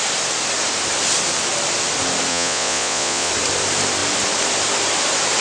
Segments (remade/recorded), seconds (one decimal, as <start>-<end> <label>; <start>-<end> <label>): 0.0-2.3 recorded; 2.3-3.3 remade; 3.3-5.4 recorded